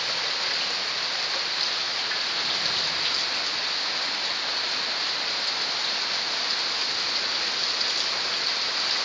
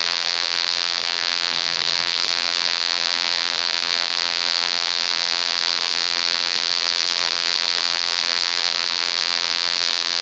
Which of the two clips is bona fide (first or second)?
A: first